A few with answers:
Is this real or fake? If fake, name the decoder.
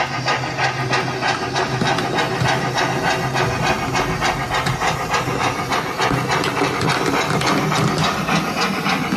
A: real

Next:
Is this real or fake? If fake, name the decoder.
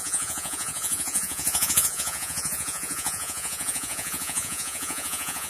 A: fake, vocoder, Vocos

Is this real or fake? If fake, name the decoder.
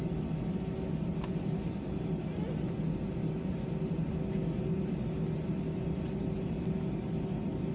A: real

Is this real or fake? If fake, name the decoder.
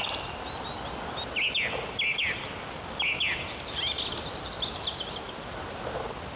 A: real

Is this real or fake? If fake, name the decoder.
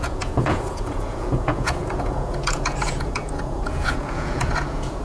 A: fake, vocoder, Vocos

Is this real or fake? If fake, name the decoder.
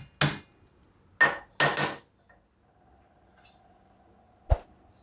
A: real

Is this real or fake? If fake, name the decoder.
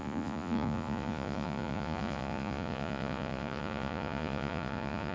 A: fake, vocoder, Vocos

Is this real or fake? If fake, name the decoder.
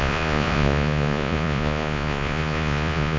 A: fake, vocoder, Vocos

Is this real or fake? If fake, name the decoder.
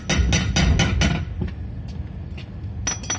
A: real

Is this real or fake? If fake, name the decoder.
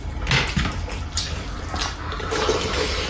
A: real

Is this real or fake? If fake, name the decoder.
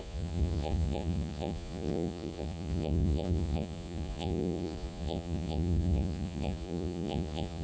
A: fake, vocoder, Vocos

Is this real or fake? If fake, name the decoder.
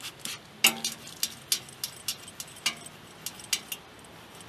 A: real